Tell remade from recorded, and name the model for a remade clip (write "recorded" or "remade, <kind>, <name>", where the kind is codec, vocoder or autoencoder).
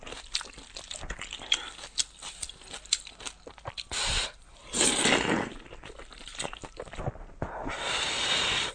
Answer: recorded